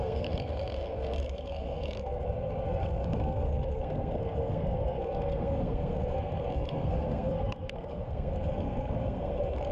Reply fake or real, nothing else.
fake